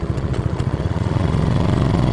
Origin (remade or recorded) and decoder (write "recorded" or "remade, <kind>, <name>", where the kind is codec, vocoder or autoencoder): remade, vocoder, Vocos